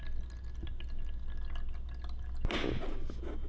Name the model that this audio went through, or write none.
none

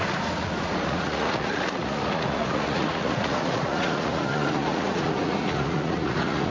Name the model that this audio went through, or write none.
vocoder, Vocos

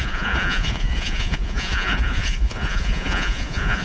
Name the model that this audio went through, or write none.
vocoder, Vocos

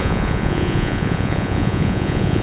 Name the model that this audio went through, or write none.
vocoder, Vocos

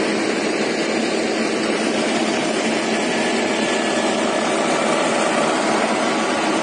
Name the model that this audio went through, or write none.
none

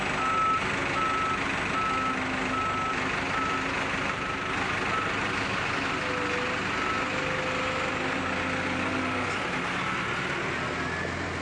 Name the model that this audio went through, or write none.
none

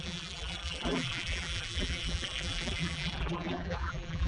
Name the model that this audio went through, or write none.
vocoder, BigVGAN v2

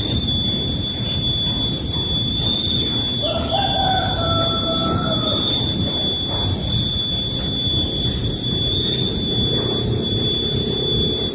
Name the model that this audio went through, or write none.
vocoder, BigVGAN v2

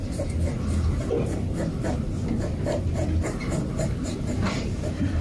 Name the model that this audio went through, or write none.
none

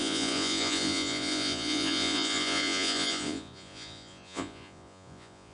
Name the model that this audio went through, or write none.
vocoder, Vocos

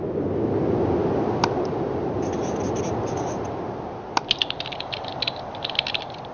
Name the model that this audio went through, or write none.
none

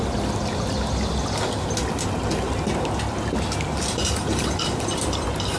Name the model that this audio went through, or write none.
none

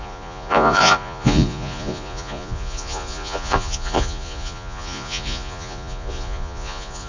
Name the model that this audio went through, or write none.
vocoder, Vocos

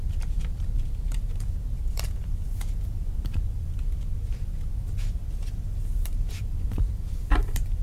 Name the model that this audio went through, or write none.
vocoder, BigVGAN v2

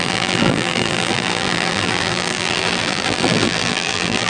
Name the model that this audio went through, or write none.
vocoder, BigVGAN v2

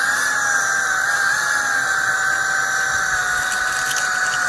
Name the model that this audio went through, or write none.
none